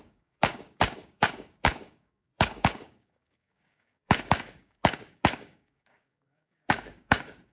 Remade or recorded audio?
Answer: remade